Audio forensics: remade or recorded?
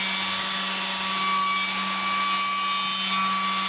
recorded